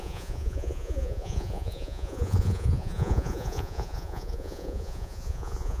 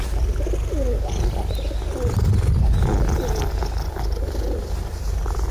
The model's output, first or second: first